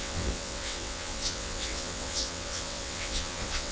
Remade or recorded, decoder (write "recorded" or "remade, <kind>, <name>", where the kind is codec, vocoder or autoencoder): remade, vocoder, WaveNeXt